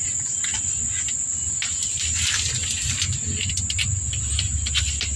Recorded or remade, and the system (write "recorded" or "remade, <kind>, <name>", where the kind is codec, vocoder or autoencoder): recorded